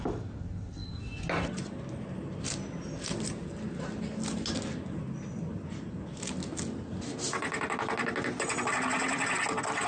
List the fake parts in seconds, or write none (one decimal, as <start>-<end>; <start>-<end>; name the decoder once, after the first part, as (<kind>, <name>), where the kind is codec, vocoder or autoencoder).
none